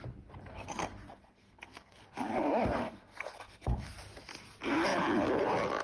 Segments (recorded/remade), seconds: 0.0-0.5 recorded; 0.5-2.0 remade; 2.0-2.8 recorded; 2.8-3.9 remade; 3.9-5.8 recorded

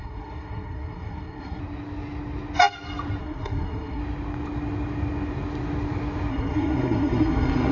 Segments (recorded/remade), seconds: 0.0-1.6 remade; 1.6-3.2 recorded; 3.2-4.0 remade; 4.0-6.3 recorded; 6.3-7.7 remade

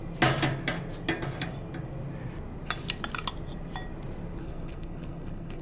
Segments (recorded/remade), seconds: 0.0-4.4 recorded; 4.4-5.6 remade

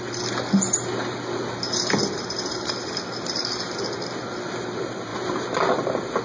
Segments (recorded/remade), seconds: 0.0-6.2 recorded